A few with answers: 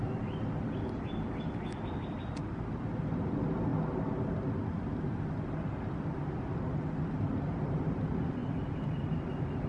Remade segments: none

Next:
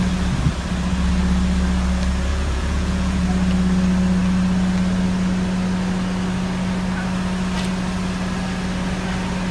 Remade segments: 2.3-3.2